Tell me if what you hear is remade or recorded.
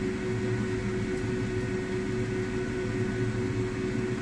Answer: recorded